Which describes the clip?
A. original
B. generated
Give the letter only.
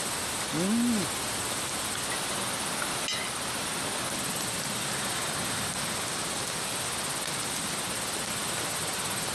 A